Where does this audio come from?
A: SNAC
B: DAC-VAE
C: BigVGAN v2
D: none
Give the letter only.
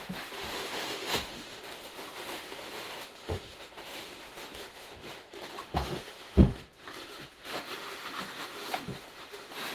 B